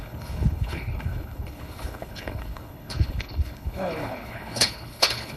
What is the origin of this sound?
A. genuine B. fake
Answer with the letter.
B